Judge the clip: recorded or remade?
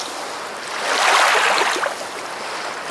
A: recorded